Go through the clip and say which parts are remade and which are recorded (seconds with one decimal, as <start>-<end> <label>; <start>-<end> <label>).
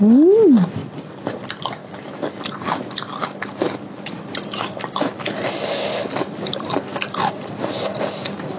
0.0-0.8 recorded; 0.8-1.4 remade; 1.4-1.8 recorded; 1.8-3.6 remade; 3.6-6.9 recorded; 6.9-7.5 remade; 7.5-8.6 recorded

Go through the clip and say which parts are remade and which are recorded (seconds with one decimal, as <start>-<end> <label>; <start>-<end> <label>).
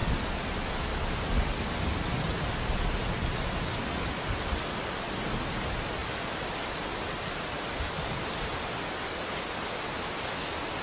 0.0-10.8 recorded